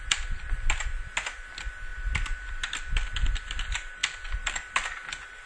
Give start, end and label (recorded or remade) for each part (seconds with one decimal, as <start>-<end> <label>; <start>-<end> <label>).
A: 0.0-5.5 recorded